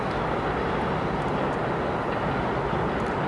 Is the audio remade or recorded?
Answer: recorded